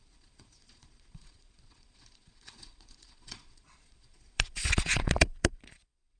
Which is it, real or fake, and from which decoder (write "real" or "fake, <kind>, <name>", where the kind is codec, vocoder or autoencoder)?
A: fake, vocoder, Vocos